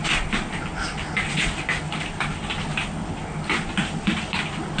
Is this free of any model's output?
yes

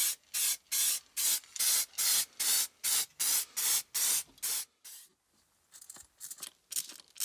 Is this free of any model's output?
yes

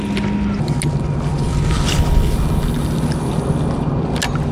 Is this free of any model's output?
yes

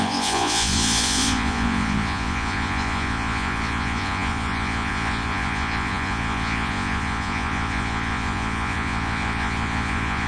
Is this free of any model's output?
no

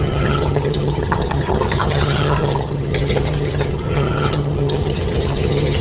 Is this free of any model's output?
no